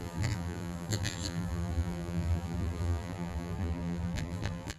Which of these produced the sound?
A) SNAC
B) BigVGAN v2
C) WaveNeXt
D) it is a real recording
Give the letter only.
B